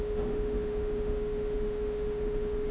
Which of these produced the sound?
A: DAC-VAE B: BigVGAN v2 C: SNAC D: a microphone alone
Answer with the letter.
A